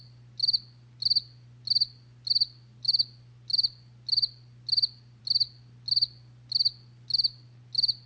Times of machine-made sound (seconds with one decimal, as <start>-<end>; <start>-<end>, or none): none